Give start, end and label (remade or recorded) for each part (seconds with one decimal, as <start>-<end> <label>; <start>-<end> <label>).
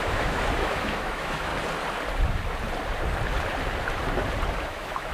0.0-1.5 remade; 1.5-4.6 recorded; 4.6-5.1 remade